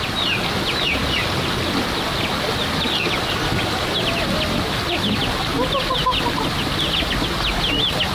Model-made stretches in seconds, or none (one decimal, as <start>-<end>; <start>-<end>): none